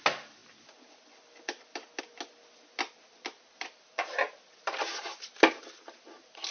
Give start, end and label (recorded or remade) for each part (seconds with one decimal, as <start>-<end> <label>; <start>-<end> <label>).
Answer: 0.0-6.5 recorded